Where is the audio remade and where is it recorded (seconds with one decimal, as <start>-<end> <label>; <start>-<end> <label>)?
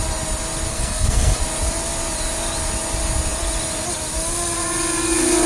0.0-0.7 recorded; 0.7-1.4 remade; 1.4-5.5 recorded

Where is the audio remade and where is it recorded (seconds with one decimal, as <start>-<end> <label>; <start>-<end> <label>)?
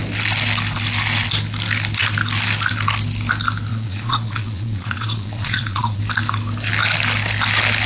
0.0-3.7 recorded; 3.7-6.0 remade; 6.0-7.9 recorded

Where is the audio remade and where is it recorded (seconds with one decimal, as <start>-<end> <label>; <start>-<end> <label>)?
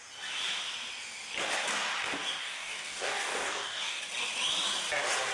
0.0-2.4 recorded; 2.4-4.0 remade; 4.0-5.3 recorded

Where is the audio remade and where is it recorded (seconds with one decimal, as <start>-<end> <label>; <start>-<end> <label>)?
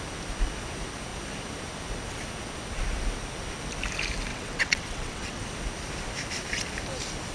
0.0-4.3 recorded; 4.3-5.4 remade; 5.4-7.3 recorded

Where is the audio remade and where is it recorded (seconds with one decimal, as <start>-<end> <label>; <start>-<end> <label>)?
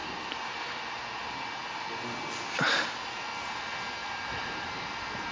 0.0-1.0 remade; 1.0-4.0 recorded; 4.0-5.3 remade